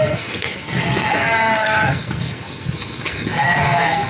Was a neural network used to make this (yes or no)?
yes